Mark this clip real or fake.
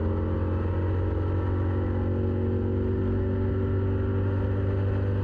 real